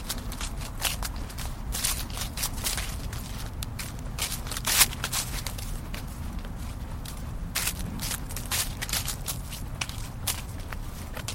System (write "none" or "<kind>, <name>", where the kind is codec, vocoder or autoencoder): none